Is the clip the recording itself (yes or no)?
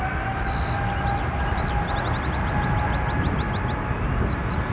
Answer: yes